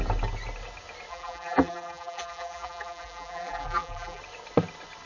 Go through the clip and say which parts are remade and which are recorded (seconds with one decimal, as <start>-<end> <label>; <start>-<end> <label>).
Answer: 0.0-1.1 recorded; 1.1-4.2 remade; 4.2-5.1 recorded